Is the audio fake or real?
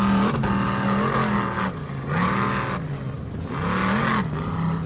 real